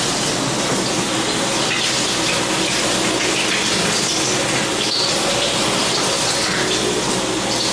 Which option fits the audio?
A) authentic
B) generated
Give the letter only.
A